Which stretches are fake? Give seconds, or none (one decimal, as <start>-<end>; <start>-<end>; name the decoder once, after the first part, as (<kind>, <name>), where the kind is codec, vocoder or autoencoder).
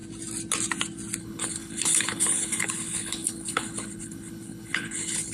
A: 1.2-5.3 (codec, HILCodec)